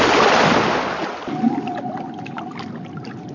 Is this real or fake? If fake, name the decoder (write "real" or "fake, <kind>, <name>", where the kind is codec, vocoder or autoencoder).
real